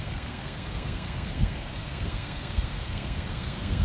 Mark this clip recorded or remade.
remade